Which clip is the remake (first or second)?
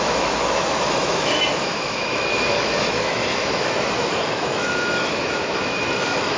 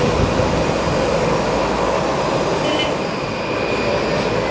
first